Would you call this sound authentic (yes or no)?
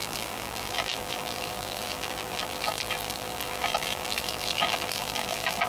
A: no